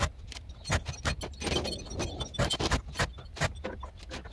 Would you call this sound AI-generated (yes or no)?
no